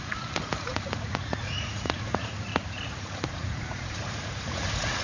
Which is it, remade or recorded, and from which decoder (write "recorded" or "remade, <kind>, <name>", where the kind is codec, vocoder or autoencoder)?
remade, vocoder, Vocos